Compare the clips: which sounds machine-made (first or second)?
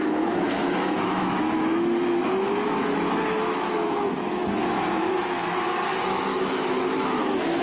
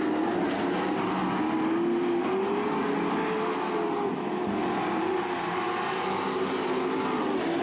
first